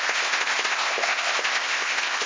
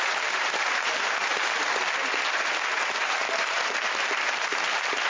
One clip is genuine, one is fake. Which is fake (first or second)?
first